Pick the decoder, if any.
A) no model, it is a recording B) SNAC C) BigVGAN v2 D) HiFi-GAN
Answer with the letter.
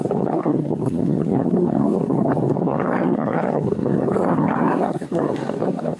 B